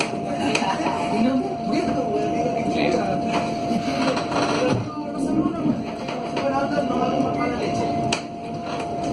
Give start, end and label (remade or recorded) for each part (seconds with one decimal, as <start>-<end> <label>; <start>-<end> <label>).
0.0-2.4 recorded; 2.4-3.0 remade; 3.0-6.6 recorded; 6.6-7.2 remade; 7.2-9.1 recorded